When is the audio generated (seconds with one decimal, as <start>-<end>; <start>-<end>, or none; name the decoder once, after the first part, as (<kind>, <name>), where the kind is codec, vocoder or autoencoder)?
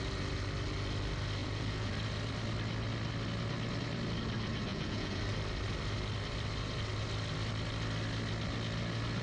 1.4-1.9 (vocoder, Vocos); 4.7-5.2